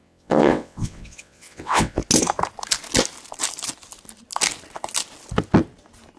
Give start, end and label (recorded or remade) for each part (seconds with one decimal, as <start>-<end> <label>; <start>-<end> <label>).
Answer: 0.0-2.0 remade; 2.0-6.2 recorded